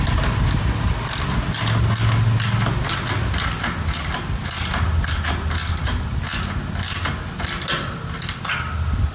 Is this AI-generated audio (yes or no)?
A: no